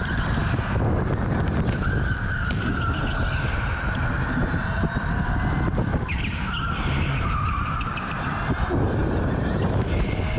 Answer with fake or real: real